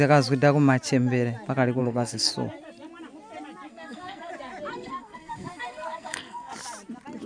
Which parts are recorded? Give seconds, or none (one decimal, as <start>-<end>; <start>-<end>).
0.0-1.8; 2.3-3.7; 4.3-4.7; 6.5-7.3